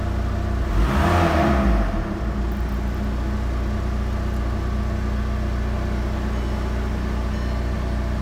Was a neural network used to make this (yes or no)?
no